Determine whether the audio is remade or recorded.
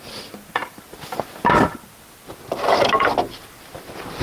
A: recorded